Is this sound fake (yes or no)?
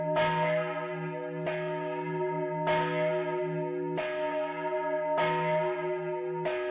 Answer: no